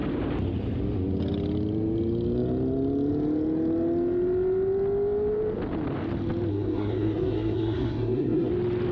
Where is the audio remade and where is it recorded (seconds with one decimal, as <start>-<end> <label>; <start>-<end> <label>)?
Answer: 0.0-6.5 recorded; 6.5-8.5 remade; 8.5-8.9 recorded